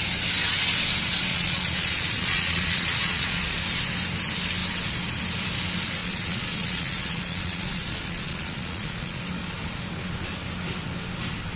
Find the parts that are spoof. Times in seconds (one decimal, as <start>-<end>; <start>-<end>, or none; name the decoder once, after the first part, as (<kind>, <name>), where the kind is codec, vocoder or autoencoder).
1.3-3.6 (vocoder, Vocos); 6.0-9.2